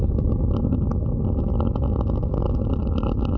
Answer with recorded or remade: recorded